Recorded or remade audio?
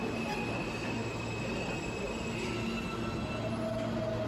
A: recorded